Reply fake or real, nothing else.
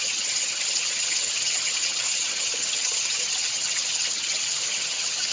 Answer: fake